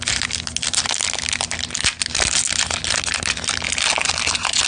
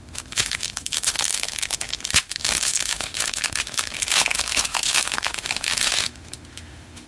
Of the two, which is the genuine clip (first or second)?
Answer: first